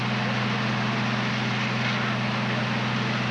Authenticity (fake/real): real